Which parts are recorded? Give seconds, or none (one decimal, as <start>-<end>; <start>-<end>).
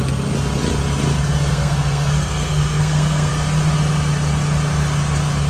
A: 0.0-1.5; 3.3-5.5